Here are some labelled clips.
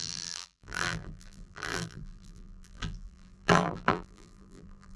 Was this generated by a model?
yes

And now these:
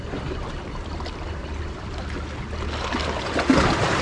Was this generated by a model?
no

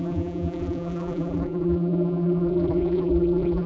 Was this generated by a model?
yes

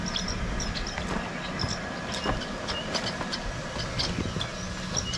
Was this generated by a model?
no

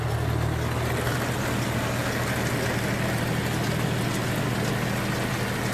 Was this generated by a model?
no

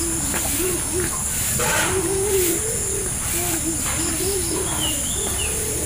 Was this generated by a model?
no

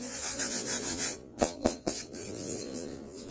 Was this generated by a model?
yes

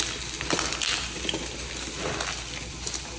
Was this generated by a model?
no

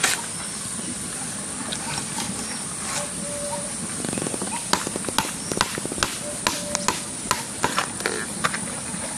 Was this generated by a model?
no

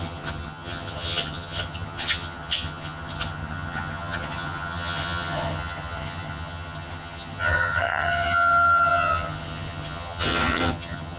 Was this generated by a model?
yes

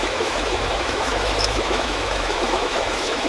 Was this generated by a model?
yes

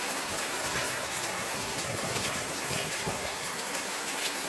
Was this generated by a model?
yes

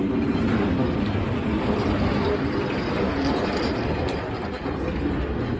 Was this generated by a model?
no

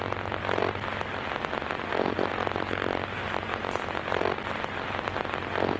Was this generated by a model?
no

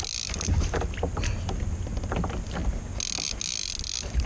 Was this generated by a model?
no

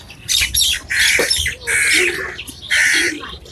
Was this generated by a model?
yes